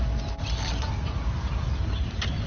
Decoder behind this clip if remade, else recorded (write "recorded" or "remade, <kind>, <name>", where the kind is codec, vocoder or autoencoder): recorded